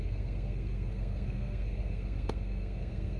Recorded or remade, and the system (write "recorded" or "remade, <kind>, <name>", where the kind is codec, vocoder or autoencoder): remade, codec, SNAC